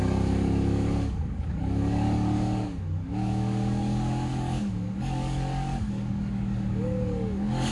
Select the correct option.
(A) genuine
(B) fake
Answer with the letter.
B